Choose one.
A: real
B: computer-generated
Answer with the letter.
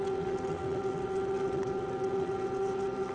B